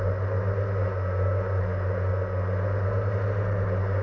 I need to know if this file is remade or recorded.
recorded